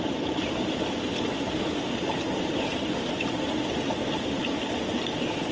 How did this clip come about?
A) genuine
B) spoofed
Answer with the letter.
A